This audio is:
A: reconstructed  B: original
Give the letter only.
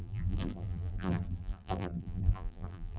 A